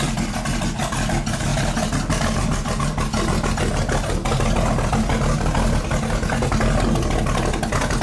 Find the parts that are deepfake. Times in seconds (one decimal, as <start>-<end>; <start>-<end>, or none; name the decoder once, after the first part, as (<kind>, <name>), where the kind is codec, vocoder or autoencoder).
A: none